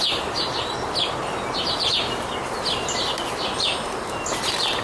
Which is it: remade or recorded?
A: recorded